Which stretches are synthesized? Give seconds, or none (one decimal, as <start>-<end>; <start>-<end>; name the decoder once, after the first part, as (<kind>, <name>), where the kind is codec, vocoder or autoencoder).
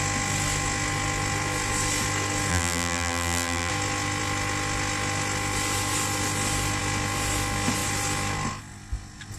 2.5-3.7 (vocoder, BigVGAN v2)